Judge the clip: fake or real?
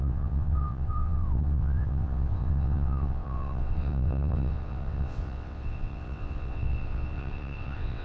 fake